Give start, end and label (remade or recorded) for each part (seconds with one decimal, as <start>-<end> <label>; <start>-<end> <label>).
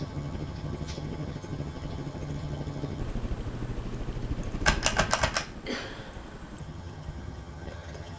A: 0.0-3.0 remade; 3.0-6.6 recorded; 6.6-8.2 remade